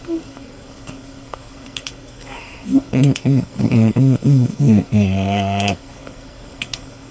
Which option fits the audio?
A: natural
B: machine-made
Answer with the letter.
B